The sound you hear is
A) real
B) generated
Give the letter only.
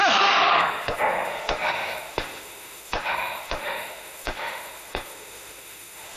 B